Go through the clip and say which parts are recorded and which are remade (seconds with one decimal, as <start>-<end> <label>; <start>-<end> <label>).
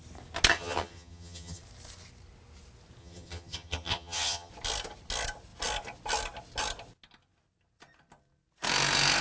0.0-0.5 recorded; 0.5-1.6 remade; 1.6-3.0 recorded; 3.0-4.5 remade; 4.5-9.2 recorded